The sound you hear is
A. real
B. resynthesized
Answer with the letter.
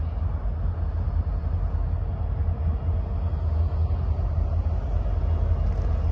A